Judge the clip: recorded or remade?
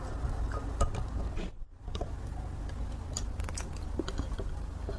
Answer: recorded